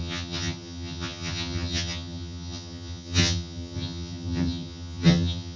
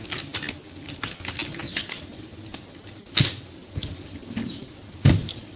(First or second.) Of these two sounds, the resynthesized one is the first